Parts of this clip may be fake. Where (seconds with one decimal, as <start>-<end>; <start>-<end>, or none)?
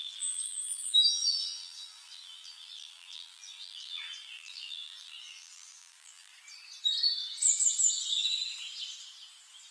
0.0-6.3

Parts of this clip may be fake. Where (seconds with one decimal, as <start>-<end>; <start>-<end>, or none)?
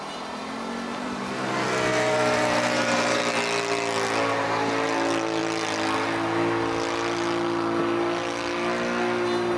0.9-1.5; 1.9-3.2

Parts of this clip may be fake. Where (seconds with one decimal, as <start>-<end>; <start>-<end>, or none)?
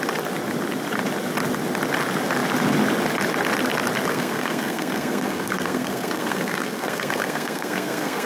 4.1-8.3